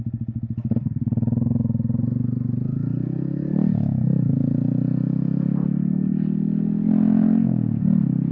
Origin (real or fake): real